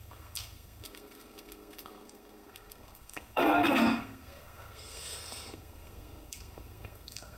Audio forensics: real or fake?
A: fake